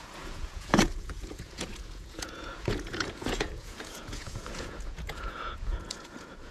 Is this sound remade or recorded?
remade